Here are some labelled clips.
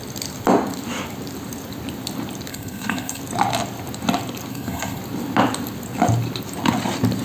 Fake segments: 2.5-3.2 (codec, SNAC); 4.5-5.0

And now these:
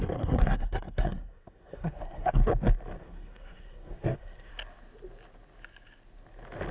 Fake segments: 0.0-2.4 (codec, SNAC); 3.0-4.5

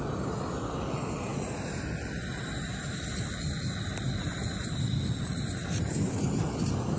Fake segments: none

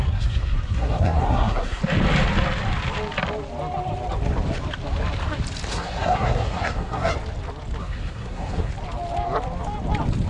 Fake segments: 0.0-1.8 (codec, SNAC); 5.7-7.1; 7.8-8.7

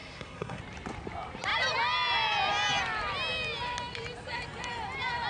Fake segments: 0.0-0.6 (codec, SNAC)